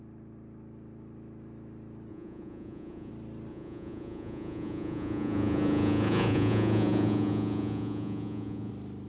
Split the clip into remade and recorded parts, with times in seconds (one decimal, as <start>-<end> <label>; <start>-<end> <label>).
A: 0.0-2.1 recorded; 2.1-3.1 remade; 3.1-3.5 recorded; 3.5-8.7 remade; 8.7-9.1 recorded